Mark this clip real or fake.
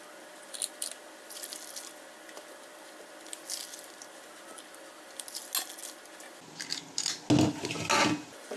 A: real